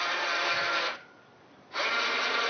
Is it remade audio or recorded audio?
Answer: recorded